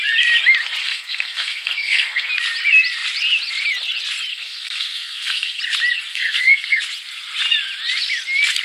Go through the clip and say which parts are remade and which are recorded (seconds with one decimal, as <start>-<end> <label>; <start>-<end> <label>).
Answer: 0.0-0.8 recorded; 0.8-2.3 remade; 2.3-4.3 recorded; 4.3-5.6 remade; 5.6-6.1 recorded; 6.1-6.8 remade; 6.8-8.6 recorded